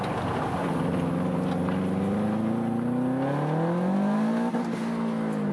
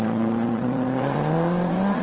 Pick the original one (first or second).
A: first